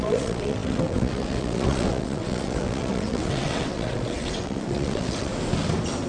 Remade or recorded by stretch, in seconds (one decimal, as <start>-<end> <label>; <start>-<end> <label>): 0.0-5.3 remade; 5.3-6.1 recorded